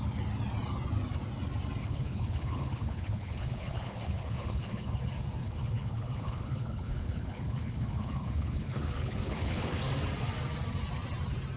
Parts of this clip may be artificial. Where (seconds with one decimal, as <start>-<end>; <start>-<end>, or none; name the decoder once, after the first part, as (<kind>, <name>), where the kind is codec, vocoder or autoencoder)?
1.8-4.9 (codec, HILCodec); 5.4-9.8